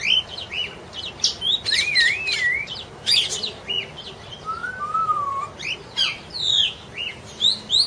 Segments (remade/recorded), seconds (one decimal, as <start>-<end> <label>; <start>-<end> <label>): 0.0-7.9 recorded